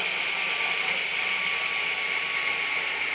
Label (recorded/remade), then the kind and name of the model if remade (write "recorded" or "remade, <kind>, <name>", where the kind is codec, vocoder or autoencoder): recorded